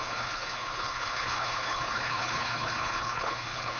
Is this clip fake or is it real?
fake